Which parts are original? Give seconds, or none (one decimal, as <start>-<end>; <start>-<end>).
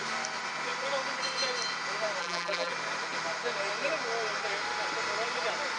0.0-2.2; 2.7-5.8